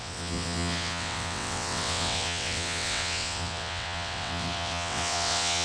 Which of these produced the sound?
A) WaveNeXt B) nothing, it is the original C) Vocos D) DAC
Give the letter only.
A